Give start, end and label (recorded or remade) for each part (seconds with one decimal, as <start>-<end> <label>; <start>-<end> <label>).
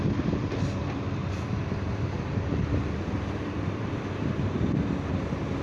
0.0-5.6 remade